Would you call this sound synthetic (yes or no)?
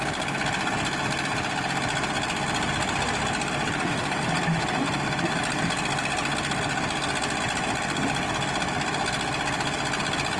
no